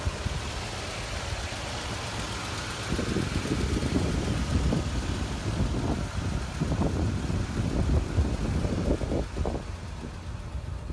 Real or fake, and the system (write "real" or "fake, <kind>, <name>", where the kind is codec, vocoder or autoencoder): real